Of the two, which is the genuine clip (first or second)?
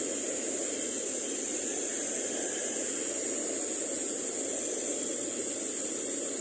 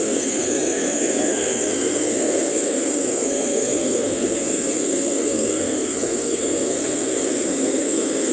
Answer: first